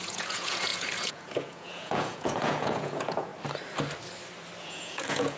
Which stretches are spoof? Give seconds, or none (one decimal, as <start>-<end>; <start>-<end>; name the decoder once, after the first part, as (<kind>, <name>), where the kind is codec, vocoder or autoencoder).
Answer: 0.0-3.3 (vocoder, Vocos); 4.6-5.4